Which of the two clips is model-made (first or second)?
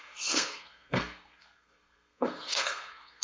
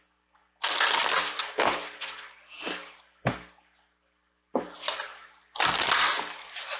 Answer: first